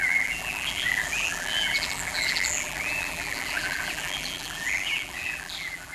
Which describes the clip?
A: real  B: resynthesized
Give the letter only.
B